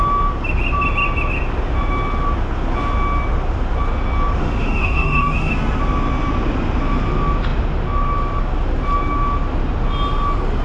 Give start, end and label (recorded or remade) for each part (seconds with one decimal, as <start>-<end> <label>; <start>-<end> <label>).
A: 0.0-4.4 recorded; 4.4-5.5 remade; 5.5-10.6 recorded